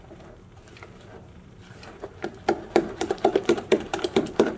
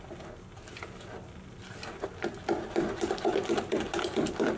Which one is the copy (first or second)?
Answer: first